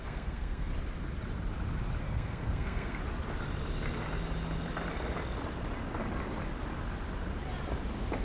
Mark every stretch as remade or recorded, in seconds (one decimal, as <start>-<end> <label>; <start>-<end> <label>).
0.0-0.7 remade; 0.7-2.0 recorded; 2.0-3.0 remade; 3.0-8.2 recorded